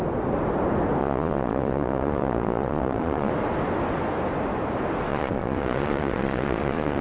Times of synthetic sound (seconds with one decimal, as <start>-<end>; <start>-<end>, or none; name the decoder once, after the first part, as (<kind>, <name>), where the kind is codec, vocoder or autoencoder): 1.0-3.3 (vocoder, Vocos); 5.1-7.0